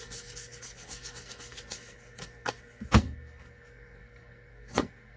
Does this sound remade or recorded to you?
remade